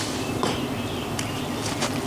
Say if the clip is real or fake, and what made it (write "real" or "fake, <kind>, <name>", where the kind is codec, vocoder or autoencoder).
real